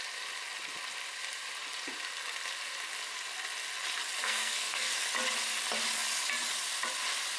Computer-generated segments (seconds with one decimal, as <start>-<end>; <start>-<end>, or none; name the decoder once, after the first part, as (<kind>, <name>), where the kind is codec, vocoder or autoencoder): 4.2-4.9 (codec, SNAC)